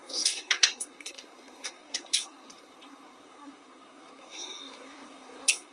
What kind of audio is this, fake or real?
fake